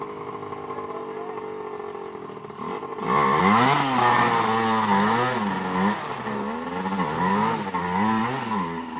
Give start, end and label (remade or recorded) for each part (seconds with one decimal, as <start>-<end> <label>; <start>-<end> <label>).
0.0-9.0 recorded